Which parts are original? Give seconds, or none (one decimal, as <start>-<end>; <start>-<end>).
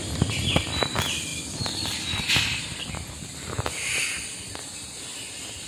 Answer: 0.0-1.3; 3.7-5.7